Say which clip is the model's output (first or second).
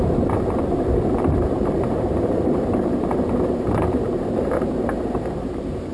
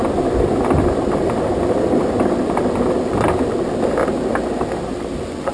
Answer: first